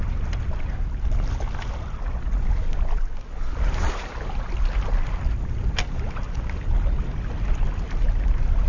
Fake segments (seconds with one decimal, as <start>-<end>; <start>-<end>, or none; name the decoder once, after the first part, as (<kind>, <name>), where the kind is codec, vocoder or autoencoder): none